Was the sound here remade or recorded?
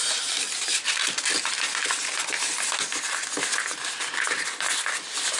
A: recorded